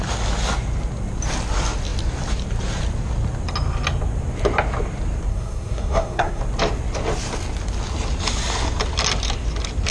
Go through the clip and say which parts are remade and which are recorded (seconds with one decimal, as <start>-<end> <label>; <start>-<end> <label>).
0.0-5.3 recorded; 5.3-6.4 remade; 6.4-9.9 recorded